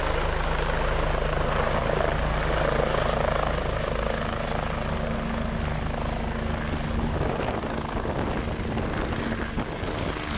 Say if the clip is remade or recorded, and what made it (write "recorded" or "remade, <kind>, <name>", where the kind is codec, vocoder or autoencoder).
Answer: recorded